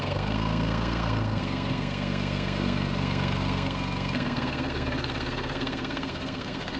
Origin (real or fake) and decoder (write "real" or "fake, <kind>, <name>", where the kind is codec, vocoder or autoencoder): fake, codec, SNAC